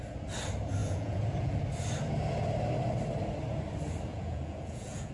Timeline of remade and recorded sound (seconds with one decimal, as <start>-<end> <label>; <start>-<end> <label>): 0.0-0.8 recorded; 0.8-1.6 remade; 1.6-4.1 recorded; 4.1-5.1 remade